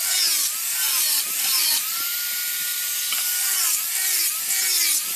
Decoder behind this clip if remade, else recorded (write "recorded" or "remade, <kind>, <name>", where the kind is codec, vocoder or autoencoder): recorded